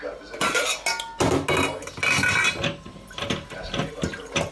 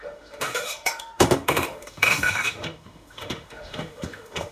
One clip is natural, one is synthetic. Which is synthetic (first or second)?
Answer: second